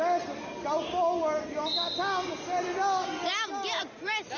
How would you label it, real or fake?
real